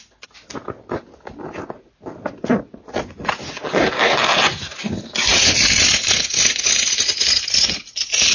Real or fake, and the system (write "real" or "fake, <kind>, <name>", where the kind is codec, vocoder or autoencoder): real